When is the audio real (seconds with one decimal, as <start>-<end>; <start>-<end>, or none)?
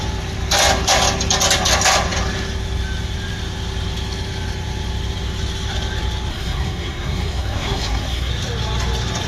0.0-6.3; 8.3-9.3